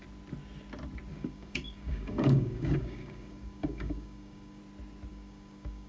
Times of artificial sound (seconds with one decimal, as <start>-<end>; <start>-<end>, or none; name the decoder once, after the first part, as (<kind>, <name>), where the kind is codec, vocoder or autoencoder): 1.1-4.6 (codec, DAC); 5.1-5.9